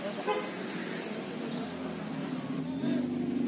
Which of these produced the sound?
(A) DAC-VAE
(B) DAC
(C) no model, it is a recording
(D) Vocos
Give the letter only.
C